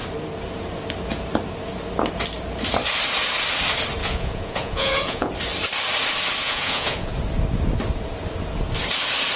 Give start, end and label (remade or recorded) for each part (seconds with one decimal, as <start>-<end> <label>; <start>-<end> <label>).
0.0-4.0 recorded; 4.0-5.3 remade; 5.3-6.4 recorded; 6.4-7.1 remade; 7.1-9.4 recorded